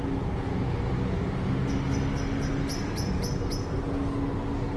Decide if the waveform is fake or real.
real